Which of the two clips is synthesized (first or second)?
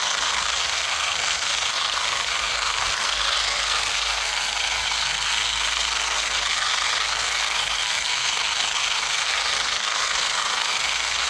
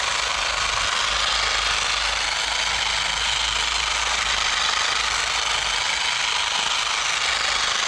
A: first